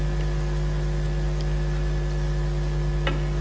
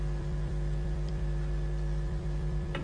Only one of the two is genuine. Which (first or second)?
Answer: first